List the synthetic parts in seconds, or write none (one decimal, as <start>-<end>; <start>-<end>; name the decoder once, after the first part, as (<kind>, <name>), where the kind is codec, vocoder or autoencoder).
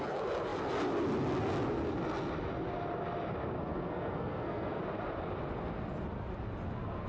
3.6-4.8 (codec, SNAC)